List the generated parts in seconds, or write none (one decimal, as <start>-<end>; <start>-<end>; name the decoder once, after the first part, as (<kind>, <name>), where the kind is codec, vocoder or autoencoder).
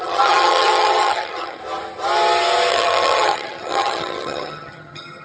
0.0-1.6 (vocoder, HiFi-GAN); 2.7-5.2